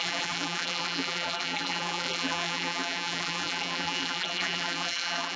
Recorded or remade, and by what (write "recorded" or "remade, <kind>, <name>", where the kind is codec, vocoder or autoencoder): remade, vocoder, BigVGAN v2